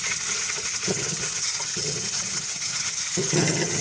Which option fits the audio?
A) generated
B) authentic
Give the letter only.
A